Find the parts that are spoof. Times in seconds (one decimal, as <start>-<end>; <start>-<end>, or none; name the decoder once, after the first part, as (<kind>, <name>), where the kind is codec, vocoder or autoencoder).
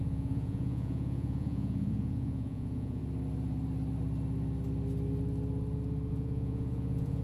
0.0-3.0 (vocoder, Vocos); 6.1-7.2